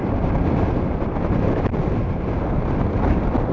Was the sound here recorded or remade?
recorded